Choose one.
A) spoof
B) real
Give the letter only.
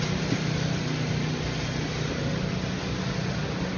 B